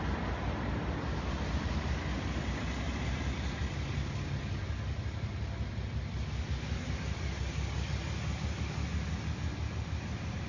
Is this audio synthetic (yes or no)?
no